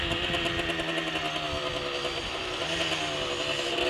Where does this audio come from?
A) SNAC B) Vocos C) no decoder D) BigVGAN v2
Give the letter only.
C